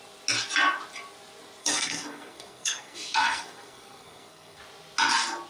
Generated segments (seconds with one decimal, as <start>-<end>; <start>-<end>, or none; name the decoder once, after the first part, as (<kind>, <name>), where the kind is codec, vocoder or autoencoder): 1.6-4.6 (codec, SNAC)